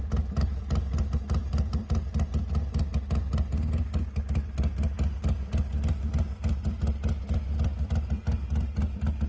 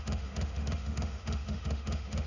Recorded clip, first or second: first